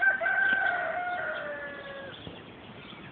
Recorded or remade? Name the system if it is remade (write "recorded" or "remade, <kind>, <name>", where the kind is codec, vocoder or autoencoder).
recorded